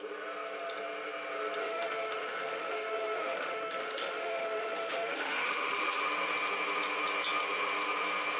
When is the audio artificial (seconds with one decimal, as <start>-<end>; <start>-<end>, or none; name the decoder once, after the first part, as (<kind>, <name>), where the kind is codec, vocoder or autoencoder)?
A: 1.6-6.0 (autoencoder, DAC-VAE)